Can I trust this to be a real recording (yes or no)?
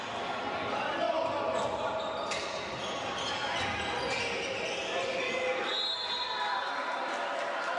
yes